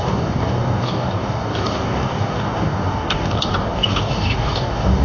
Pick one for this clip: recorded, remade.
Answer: remade